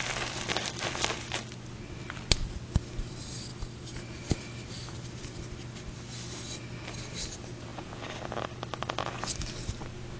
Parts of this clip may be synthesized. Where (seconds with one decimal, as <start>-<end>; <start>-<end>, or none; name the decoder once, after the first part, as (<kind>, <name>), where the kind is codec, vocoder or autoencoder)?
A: 7.7-8.2 (vocoder, Vocos)